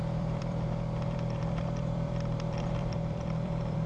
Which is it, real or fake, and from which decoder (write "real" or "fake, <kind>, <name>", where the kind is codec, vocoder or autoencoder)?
fake, vocoder, BigVGAN v2